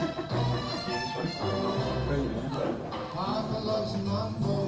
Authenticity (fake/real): real